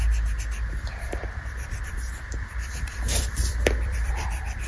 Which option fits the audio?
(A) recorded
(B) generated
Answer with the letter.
B